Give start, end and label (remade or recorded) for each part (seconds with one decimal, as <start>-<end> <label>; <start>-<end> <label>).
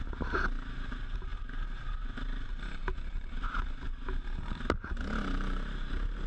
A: 0.0-6.3 recorded